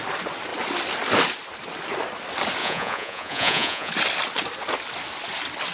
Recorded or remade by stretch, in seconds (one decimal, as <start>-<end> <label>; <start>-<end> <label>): 0.0-2.6 recorded; 2.6-3.9 remade; 3.9-5.7 recorded